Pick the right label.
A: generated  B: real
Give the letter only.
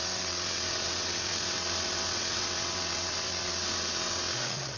A